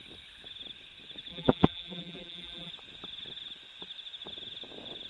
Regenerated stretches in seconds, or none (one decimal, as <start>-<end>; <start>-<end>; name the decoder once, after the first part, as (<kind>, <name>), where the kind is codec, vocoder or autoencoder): 1.3-2.7 (vocoder, BigVGAN v2)